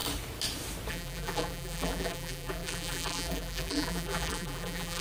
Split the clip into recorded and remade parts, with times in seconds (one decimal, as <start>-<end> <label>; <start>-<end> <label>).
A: 0.0-0.9 recorded; 0.9-5.0 remade